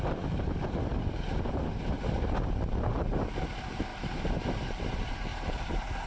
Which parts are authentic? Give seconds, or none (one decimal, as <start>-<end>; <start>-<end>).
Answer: 0.0-3.9; 4.4-5.3